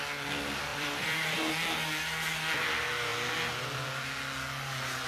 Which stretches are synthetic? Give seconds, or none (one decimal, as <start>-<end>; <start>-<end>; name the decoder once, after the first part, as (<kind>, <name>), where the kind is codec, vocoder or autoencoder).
0.7-1.5 (vocoder, BigVGAN v2)